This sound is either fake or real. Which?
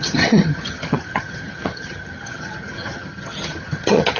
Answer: fake